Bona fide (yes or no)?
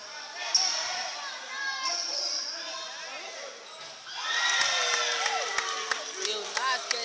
yes